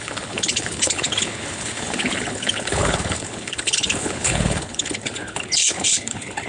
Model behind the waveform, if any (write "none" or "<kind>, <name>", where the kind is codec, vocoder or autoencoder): codec, HILCodec